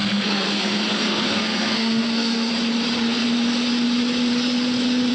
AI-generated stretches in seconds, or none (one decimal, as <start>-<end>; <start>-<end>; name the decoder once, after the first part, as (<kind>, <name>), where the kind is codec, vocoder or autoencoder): 0.0-2.5 (codec, SNAC)